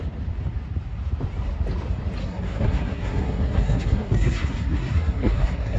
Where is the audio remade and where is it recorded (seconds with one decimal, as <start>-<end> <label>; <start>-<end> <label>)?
0.0-2.2 recorded; 2.2-5.8 remade